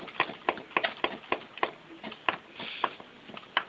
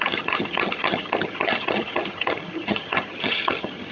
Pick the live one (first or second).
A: first